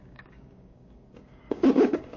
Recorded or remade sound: remade